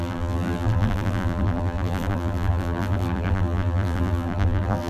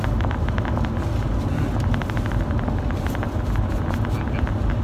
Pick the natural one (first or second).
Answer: second